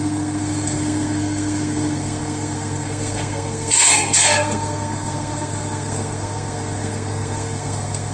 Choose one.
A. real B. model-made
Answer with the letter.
B